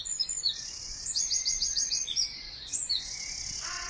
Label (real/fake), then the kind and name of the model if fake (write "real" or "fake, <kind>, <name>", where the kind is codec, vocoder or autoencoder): fake, vocoder, Vocos